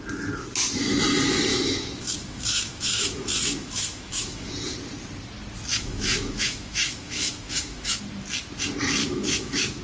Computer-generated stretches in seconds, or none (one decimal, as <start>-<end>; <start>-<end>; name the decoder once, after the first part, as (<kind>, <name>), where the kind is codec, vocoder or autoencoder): 1.5-4.5 (autoencoder, DAC-VAE); 5.7-8.0; 9.0-9.8